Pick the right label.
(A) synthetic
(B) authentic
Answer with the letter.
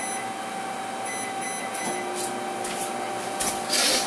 B